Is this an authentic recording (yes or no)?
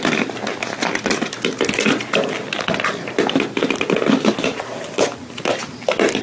yes